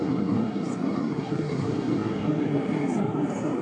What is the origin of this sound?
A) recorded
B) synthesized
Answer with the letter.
B